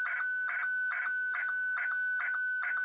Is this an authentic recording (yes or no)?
yes